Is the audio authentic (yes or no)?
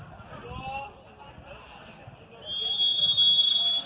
yes